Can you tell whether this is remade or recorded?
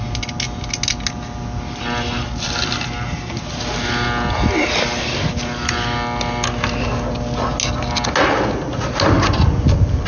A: recorded